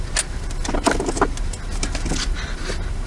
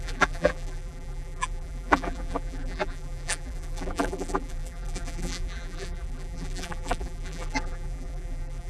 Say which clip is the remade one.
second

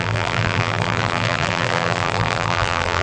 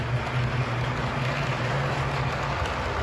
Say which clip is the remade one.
first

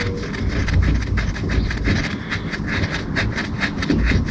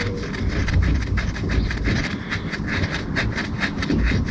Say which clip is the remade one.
second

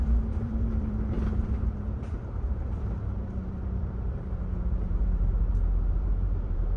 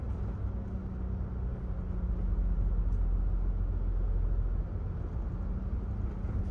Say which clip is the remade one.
first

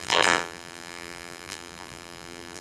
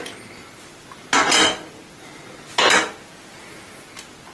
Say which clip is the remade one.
first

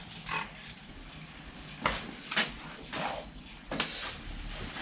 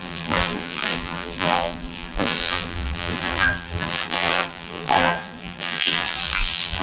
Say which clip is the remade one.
second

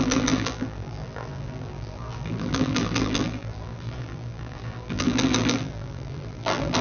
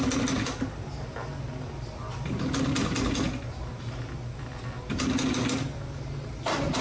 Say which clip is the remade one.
first